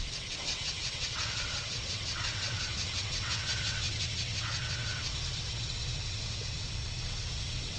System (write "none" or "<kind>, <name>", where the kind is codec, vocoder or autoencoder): vocoder, WaveNeXt